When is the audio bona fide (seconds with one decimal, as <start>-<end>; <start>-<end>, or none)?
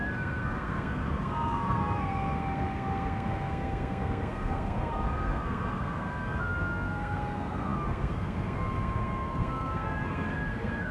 none